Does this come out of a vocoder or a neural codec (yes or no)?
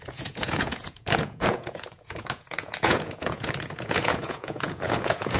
yes